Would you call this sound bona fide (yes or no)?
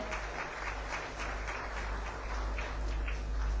yes